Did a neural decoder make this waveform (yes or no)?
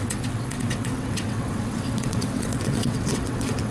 yes